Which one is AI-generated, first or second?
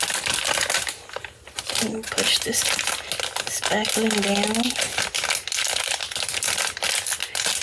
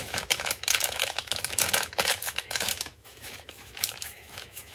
second